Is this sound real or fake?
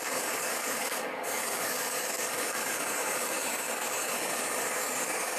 fake